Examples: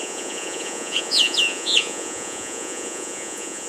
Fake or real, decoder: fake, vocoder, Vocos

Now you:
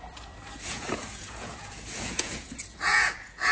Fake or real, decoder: fake, vocoder, Vocos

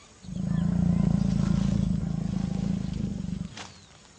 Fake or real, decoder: real